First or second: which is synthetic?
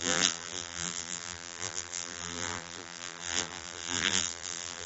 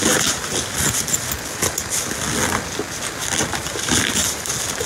first